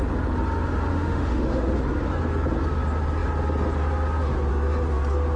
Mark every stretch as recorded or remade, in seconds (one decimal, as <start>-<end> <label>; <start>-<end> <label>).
0.0-0.9 recorded; 0.9-1.7 remade; 1.7-5.4 recorded

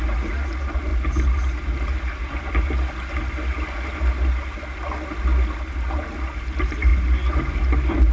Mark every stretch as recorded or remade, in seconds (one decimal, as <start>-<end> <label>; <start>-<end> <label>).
0.0-8.1 recorded

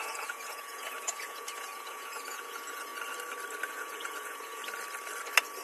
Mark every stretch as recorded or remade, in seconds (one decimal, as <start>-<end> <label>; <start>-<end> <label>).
0.0-2.9 remade; 2.9-3.7 recorded; 3.7-4.6 remade; 4.6-5.6 recorded

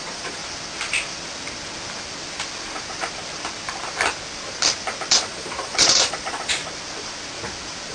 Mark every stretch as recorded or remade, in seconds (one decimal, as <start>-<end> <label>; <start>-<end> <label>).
0.0-0.4 remade; 0.4-5.1 recorded; 5.1-6.6 remade; 6.6-7.9 recorded

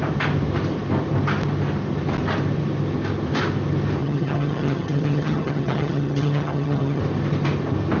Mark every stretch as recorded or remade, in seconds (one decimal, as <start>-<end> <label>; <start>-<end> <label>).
0.0-4.0 recorded; 4.0-7.0 remade; 7.0-8.0 recorded

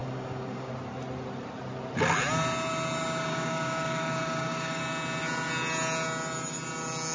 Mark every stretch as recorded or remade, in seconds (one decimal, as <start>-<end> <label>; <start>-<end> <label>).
0.0-0.7 remade; 0.7-3.3 recorded; 3.3-4.8 remade; 4.8-7.1 recorded

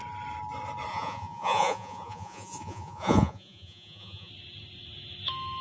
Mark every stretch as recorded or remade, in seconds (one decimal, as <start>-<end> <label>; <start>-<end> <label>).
0.0-0.9 recorded; 0.9-4.3 remade; 4.3-5.6 recorded

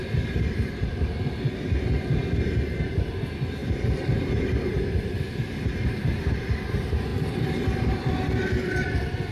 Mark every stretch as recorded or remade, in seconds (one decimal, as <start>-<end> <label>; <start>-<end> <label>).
0.0-3.6 recorded; 3.6-4.3 remade; 4.3-7.1 recorded; 7.1-9.3 remade